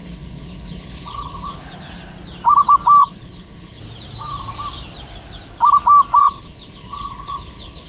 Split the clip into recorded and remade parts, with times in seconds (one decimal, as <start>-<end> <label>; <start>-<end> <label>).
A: 0.0-1.5 remade; 1.5-3.0 recorded; 3.0-3.8 remade; 3.8-6.2 recorded; 6.2-7.9 remade